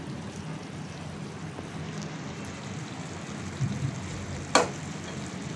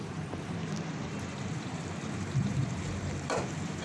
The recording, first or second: first